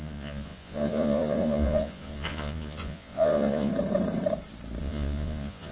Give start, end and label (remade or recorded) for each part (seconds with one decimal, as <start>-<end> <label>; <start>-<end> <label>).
0.0-3.7 remade; 3.7-4.8 recorded; 4.8-5.7 remade